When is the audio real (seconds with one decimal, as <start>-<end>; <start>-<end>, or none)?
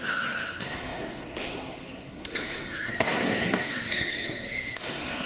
none